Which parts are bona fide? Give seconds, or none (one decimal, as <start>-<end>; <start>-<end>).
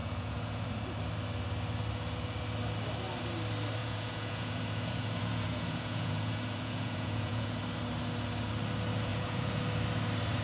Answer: 0.7-3.8; 7.6-9.1; 9.6-10.4